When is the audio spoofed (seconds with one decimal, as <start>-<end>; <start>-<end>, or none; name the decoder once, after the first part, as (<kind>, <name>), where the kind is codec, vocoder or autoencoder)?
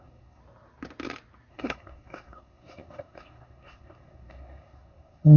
0.0-0.4 (codec, SNAC); 1.5-5.4